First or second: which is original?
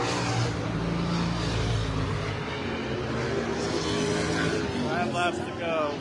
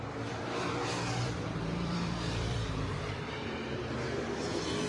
first